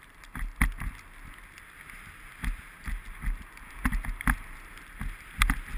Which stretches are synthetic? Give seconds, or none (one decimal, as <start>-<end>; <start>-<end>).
none